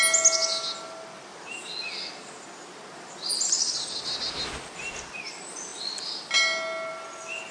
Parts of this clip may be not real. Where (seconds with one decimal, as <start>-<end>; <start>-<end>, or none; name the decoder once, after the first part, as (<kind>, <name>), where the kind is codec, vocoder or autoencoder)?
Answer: none

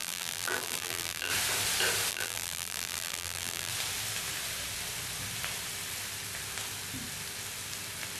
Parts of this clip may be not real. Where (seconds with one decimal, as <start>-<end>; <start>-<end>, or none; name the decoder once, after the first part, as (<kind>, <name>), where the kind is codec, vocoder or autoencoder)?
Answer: 0.0-1.3 (vocoder, BigVGAN v2); 2.1-3.7